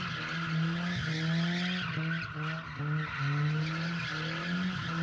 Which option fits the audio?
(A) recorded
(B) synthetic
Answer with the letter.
A